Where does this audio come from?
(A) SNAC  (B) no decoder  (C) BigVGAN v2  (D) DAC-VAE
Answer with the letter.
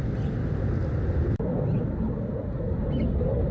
B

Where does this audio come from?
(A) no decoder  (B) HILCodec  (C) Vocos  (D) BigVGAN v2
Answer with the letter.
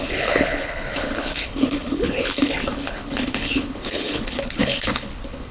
B